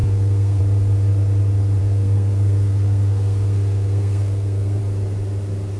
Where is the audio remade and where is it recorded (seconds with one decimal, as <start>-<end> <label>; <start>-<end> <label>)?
0.0-0.6 remade; 0.6-1.8 recorded; 1.8-4.8 remade; 4.8-5.8 recorded